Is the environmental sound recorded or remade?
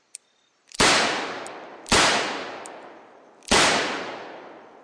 recorded